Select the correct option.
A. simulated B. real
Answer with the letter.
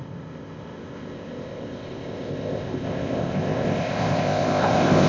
A